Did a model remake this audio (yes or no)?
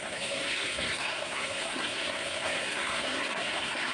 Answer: yes